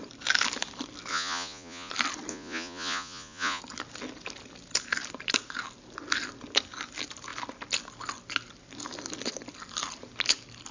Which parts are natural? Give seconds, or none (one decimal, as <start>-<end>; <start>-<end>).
0.0-1.1; 1.9-2.3; 3.6-10.7